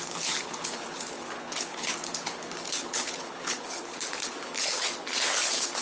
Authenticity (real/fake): fake